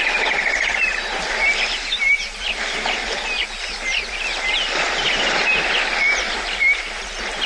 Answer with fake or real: real